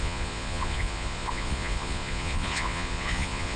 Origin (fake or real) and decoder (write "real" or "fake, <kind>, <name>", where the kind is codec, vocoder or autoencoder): fake, vocoder, Vocos